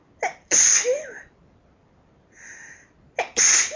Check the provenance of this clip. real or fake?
fake